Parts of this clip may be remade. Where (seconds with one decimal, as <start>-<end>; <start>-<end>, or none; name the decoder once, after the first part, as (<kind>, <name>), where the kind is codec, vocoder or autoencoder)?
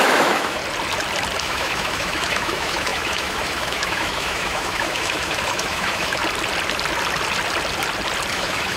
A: 0.0-0.6 (autoencoder, DAC-VAE); 1.4-6.2; 8.3-8.8